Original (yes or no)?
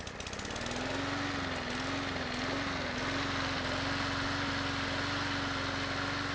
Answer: yes